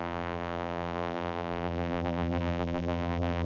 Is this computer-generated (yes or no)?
yes